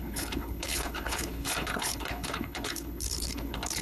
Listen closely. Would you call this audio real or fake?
fake